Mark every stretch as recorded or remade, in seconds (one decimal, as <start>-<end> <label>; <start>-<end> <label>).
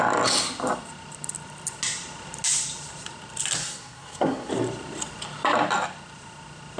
0.0-3.6 recorded; 3.6-4.5 remade; 4.5-6.8 recorded